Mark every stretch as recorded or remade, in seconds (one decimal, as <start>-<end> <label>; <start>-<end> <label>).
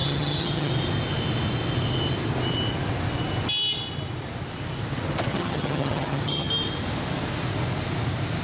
0.0-0.7 remade; 0.7-5.3 recorded; 5.3-6.5 remade; 6.5-8.4 recorded